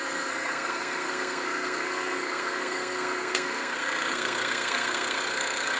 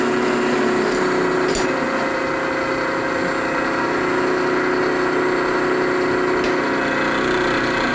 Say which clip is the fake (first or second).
first